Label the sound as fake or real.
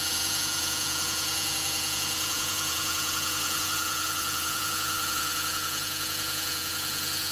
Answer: fake